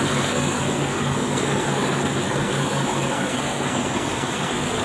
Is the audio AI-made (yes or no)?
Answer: yes